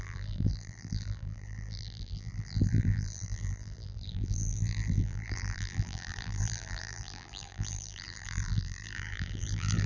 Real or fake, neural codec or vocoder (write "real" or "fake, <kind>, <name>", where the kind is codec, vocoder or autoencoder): fake, vocoder, BigVGAN v2